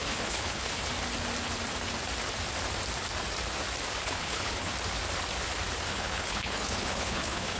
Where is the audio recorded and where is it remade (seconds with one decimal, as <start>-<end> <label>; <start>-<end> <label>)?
0.0-0.9 remade; 0.9-4.0 recorded; 4.0-4.7 remade; 4.7-5.9 recorded; 5.9-7.6 remade